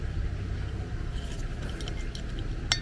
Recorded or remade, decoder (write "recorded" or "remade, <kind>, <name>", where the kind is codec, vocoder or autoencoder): recorded